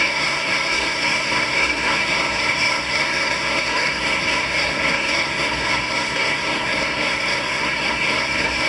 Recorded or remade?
remade